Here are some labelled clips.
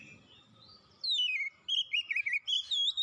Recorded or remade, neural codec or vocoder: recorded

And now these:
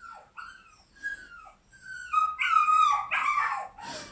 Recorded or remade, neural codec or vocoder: recorded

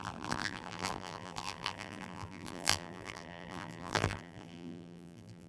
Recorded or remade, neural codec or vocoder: remade, vocoder, BigVGAN v2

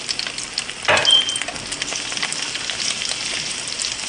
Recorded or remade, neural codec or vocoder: recorded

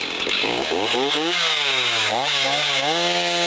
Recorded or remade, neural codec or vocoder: remade, codec, DAC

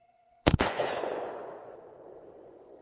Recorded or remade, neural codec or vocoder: remade, vocoder, Vocos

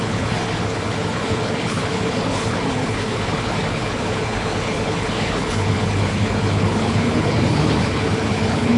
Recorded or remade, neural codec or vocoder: remade, codec, HILCodec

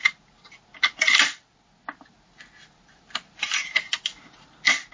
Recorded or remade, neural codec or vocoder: recorded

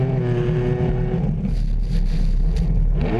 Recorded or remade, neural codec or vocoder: recorded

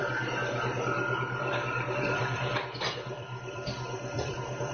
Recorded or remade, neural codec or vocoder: remade, vocoder, BigVGAN v2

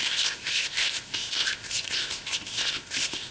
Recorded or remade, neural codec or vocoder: remade, codec, ZipCodec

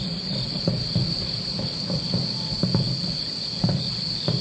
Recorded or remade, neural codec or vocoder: recorded